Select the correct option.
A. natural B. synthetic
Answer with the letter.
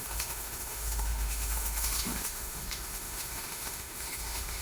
B